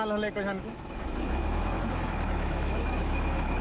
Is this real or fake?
fake